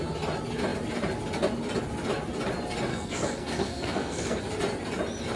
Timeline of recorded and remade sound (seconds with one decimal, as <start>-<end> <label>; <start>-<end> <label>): 0.0-2.9 recorded; 2.9-4.4 remade; 4.4-5.4 recorded